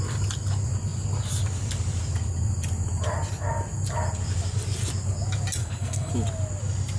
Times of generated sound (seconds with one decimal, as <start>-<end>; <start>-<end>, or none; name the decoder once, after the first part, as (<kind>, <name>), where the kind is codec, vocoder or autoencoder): 5.6-6.1 (codec, SNAC)